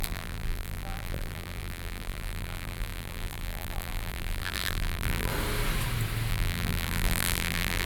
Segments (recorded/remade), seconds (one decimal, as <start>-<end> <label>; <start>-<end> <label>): 0.0-5.3 remade; 5.3-6.3 recorded; 6.3-7.9 remade